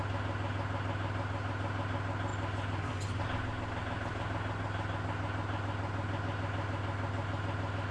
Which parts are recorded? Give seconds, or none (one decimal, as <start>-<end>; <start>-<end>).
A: 0.0-7.9